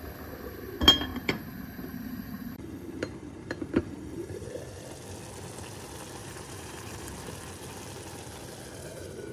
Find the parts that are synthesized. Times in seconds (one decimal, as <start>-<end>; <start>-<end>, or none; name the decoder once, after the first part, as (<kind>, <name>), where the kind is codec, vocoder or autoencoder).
1.1-4.5 (vocoder, BigVGAN v2); 6.2-7.1